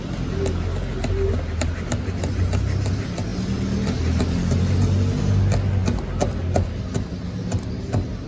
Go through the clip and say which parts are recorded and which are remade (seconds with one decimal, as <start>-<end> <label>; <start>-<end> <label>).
0.0-8.3 recorded